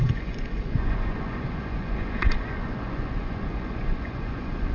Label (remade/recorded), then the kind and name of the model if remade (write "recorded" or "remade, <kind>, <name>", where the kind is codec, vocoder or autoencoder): remade, vocoder, Vocos